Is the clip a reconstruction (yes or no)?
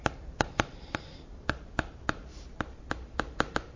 yes